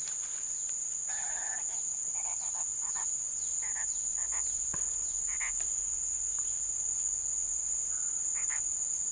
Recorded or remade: remade